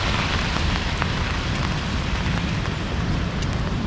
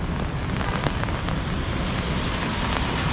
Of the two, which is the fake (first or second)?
first